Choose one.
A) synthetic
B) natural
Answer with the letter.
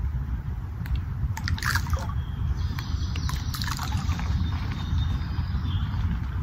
A